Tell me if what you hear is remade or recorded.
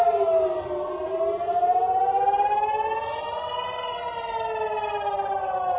recorded